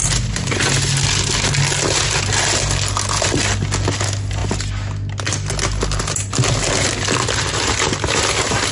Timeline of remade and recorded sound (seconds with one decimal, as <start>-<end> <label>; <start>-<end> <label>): 0.0-8.7 recorded